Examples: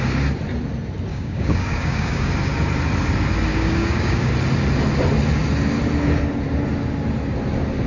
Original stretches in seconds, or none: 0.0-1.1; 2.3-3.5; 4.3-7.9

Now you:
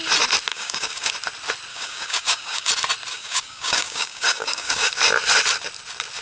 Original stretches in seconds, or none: 0.0-0.5; 1.1-1.7; 2.7-3.1; 4.9-6.2

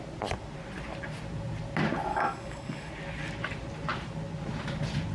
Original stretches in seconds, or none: 0.0-2.1; 2.9-5.1

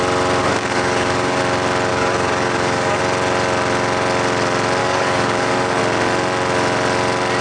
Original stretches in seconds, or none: 0.0-0.4; 1.4-1.9; 3.0-4.8; 5.8-7.4

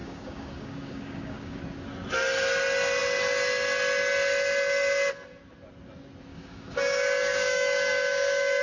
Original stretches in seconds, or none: 1.6-6.3

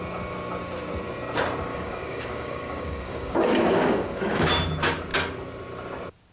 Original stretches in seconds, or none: 0.0-1.7; 4.5-6.3